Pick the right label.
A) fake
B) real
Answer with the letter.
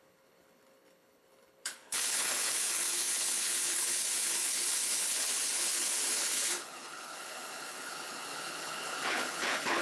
A